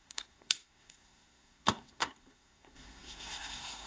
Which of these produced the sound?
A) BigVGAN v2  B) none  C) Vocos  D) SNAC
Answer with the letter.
D